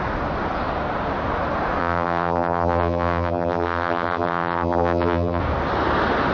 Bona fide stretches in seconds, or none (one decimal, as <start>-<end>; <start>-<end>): 0.0-1.8; 5.4-6.3